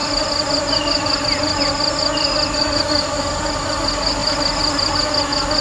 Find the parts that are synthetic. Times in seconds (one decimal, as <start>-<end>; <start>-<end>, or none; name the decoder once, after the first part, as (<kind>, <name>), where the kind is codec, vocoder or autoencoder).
none

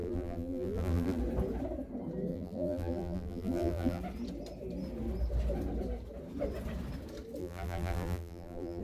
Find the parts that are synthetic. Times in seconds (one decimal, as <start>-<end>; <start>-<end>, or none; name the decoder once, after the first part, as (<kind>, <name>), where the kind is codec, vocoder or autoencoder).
0.0-1.2 (vocoder, BigVGAN v2); 2.3-4.0; 7.4-8.8

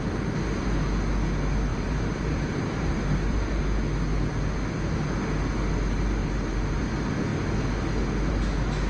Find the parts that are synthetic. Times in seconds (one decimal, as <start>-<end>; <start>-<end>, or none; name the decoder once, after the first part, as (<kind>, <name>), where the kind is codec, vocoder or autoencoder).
1.7-3.6 (vocoder, BigVGAN v2); 6.2-6.8

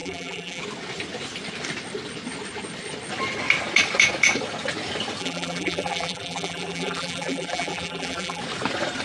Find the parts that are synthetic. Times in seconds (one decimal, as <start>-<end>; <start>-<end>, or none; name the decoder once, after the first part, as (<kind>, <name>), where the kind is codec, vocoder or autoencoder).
0.0-0.6 (vocoder, BigVGAN v2); 5.2-8.4

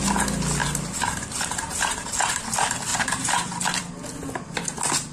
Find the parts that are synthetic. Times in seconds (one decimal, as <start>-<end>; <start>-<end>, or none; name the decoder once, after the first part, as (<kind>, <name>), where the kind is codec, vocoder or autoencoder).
0.6-2.4 (vocoder, BigVGAN v2); 2.9-3.9

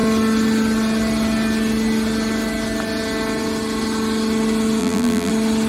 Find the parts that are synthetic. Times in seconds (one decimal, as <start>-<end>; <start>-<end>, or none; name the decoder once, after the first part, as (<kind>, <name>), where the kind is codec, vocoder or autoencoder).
4.8-5.3 (vocoder, BigVGAN v2)

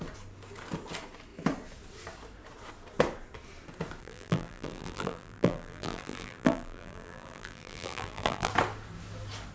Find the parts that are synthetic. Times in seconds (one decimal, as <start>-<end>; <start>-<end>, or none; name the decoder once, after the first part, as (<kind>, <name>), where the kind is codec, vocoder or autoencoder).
4.0-8.5 (vocoder, BigVGAN v2)